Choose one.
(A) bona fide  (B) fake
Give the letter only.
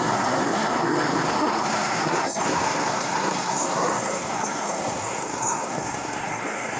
B